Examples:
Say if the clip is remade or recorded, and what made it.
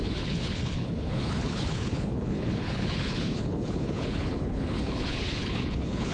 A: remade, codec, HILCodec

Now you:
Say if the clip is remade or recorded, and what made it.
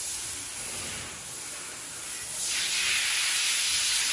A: recorded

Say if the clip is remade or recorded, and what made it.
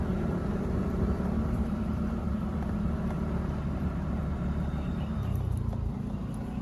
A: remade, vocoder, BigVGAN v2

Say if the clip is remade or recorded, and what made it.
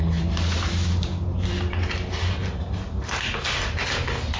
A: recorded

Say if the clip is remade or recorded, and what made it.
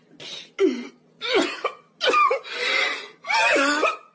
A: recorded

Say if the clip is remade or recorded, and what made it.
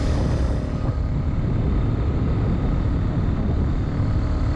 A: recorded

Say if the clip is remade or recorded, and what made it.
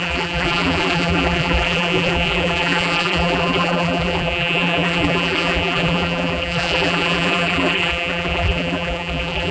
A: remade, vocoder, BigVGAN v2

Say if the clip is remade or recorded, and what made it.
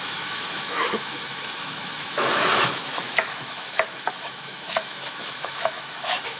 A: remade, autoencoder, DAC-VAE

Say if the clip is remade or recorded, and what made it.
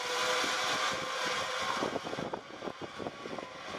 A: recorded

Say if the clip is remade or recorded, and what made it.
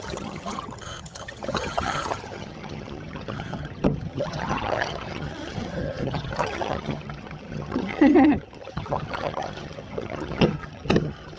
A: remade, vocoder, HiFi-GAN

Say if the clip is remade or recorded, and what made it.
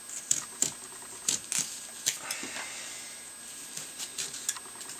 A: recorded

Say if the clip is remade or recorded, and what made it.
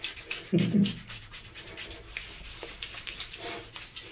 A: recorded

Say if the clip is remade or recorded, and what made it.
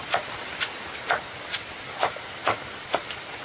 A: recorded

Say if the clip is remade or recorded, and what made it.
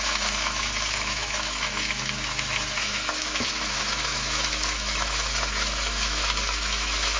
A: remade, autoencoder, DAC-VAE